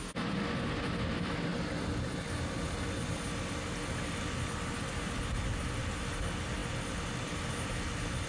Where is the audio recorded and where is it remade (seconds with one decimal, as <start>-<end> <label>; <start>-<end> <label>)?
0.0-8.3 recorded